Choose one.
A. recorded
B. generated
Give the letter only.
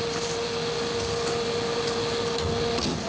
A